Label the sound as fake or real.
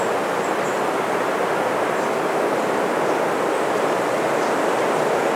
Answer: real